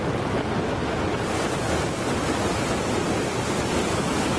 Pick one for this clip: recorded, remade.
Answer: recorded